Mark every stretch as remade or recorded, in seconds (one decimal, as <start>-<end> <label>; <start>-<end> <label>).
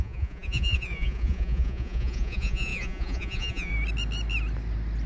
0.0-3.7 remade; 3.7-5.1 recorded